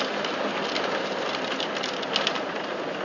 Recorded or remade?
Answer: recorded